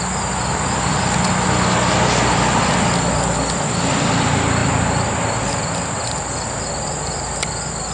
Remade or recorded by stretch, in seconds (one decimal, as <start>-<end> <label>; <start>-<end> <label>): 0.0-7.9 recorded